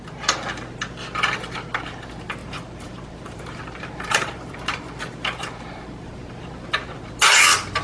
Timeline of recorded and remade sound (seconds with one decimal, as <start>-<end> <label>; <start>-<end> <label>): 0.0-2.4 recorded; 2.4-7.1 remade; 7.1-7.8 recorded